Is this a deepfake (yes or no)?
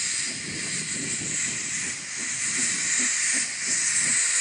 no